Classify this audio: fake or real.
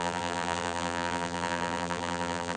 fake